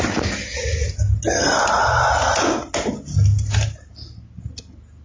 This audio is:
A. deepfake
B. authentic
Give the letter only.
B